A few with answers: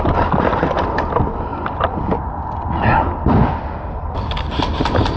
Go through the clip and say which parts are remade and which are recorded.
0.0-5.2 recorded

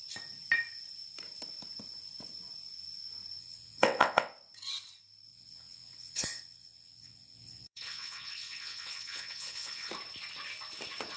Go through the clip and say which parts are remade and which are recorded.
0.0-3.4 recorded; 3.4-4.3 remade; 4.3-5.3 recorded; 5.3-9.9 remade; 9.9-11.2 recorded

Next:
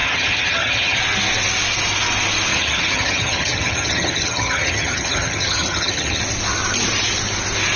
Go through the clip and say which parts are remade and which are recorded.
0.0-1.0 remade; 1.0-2.5 recorded; 2.5-6.2 remade; 6.2-7.8 recorded

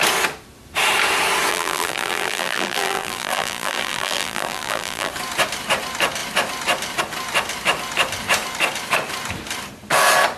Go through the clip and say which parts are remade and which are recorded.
0.0-1.5 recorded; 1.5-5.1 remade; 5.1-10.4 recorded

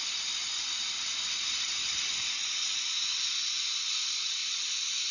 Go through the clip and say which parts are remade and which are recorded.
0.0-4.4 recorded; 4.4-5.1 remade

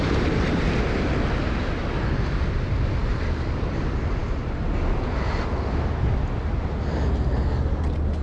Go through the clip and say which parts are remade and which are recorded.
0.0-3.0 recorded; 3.0-3.8 remade; 3.8-8.2 recorded